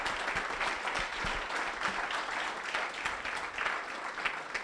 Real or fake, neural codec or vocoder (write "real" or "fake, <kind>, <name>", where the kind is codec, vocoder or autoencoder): real